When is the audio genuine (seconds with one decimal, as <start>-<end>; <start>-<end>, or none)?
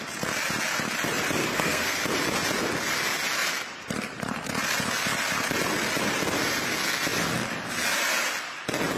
0.0-1.4; 2.0-9.0